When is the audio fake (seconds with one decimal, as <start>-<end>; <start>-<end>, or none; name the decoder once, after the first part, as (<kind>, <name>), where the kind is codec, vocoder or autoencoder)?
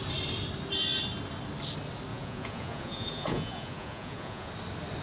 2.1-4.5 (vocoder, Vocos)